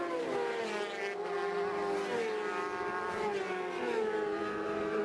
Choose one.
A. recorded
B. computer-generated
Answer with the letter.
A